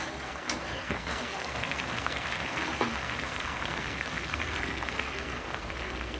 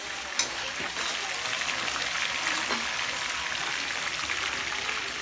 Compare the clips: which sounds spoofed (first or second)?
first